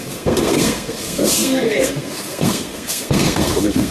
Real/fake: fake